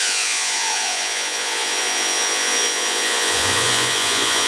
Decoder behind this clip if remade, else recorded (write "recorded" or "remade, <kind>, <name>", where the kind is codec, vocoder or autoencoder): remade, vocoder, Vocos